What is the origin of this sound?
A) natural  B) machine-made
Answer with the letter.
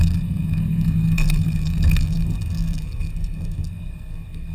B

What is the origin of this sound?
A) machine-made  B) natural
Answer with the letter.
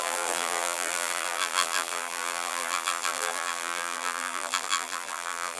A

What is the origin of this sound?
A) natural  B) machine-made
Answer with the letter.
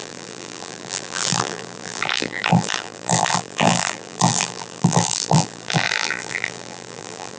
B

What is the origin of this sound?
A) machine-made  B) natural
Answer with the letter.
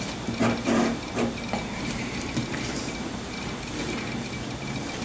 B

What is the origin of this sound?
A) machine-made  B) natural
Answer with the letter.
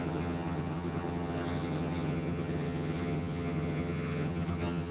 A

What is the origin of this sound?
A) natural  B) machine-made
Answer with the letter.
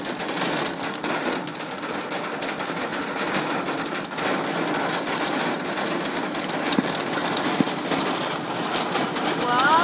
A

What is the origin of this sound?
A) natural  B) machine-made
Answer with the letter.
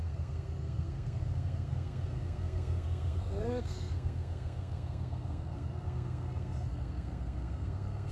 B